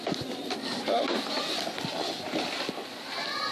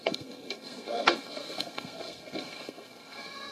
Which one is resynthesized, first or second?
second